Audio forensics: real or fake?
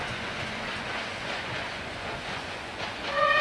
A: fake